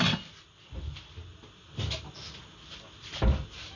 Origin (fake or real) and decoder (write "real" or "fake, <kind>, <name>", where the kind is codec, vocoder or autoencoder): real